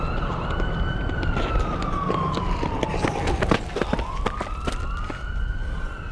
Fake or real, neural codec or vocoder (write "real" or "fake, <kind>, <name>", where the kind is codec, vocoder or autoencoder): real